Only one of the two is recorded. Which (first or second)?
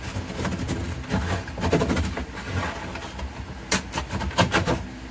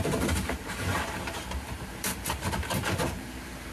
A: first